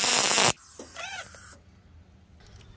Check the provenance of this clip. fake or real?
real